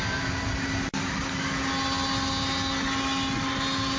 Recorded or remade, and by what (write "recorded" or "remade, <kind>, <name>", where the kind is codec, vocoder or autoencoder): recorded